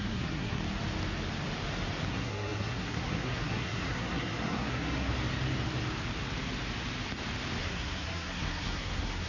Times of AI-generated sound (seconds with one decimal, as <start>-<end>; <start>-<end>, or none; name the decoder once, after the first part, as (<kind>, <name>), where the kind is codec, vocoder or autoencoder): 0.0-0.6 (codec, SNAC); 2.1-5.1; 7.6-9.3